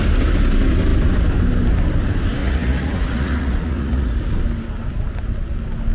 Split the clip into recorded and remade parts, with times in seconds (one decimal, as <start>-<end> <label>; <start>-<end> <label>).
0.0-2.4 recorded; 2.4-4.3 remade; 4.3-5.9 recorded